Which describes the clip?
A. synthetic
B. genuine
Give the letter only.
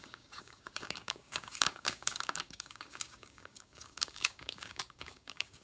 A